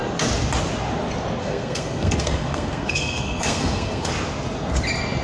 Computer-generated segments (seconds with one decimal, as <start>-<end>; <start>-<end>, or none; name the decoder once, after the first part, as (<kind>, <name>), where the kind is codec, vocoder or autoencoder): 1.4-4.1 (codec, SNAC)